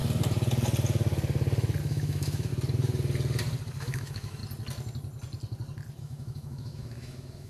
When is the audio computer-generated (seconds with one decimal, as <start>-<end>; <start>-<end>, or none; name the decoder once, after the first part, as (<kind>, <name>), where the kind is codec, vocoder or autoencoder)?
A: 1.8-2.5 (autoencoder, DAC-VAE); 3.8-4.4; 6.0-7.5